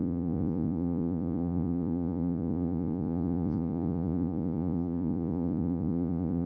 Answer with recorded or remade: remade